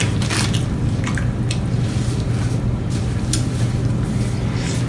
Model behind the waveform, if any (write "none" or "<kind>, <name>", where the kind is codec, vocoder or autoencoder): none